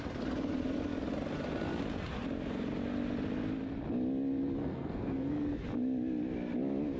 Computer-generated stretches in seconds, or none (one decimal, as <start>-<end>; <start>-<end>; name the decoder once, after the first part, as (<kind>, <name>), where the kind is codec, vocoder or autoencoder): 4.6-5.3 (codec, SNAC)